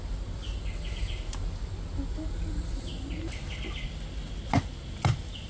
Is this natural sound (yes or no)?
yes